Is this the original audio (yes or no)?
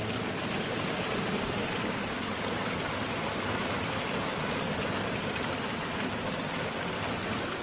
yes